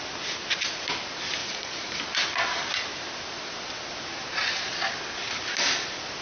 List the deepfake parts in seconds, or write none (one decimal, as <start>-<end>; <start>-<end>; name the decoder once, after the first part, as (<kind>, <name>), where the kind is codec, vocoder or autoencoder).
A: 1.4-2.0 (vocoder, Vocos)